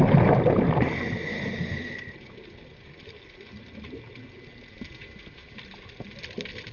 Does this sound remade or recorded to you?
recorded